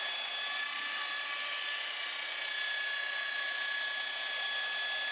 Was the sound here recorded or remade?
recorded